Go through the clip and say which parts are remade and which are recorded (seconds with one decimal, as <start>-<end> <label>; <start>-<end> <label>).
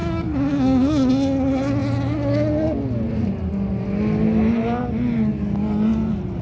0.0-1.1 remade; 1.1-6.4 recorded